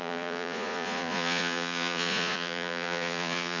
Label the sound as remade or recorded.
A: remade